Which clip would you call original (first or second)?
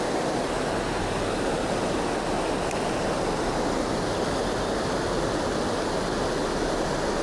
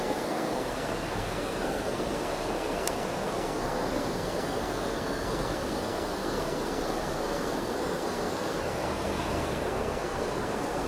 first